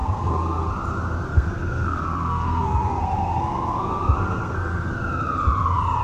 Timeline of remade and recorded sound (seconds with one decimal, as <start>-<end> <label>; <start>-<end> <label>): 0.0-0.7 remade; 0.7-1.3 recorded; 1.3-4.9 remade; 4.9-6.0 recorded